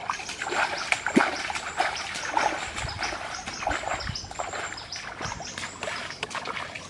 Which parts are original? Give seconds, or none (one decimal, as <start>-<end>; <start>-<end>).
0.0-6.0; 6.5-6.9